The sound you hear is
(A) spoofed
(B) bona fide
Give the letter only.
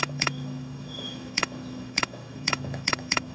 A